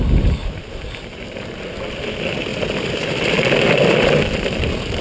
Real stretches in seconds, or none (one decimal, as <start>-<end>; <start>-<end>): 0.0-0.4; 1.0-2.5